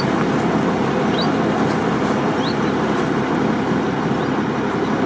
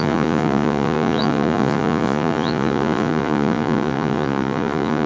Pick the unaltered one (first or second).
first